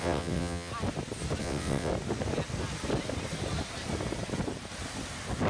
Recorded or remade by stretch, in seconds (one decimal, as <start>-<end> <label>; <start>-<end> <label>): 0.0-0.7 remade; 0.7-1.4 recorded; 1.4-1.9 remade; 1.9-5.5 recorded